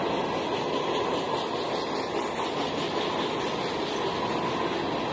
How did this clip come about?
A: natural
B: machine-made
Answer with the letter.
A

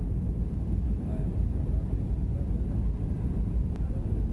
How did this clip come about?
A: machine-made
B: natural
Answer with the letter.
B